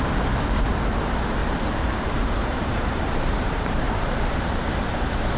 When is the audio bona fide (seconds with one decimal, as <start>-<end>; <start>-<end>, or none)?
0.0-1.4; 4.6-5.4